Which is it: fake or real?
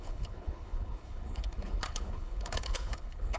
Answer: fake